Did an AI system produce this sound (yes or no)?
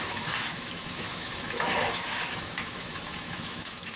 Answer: yes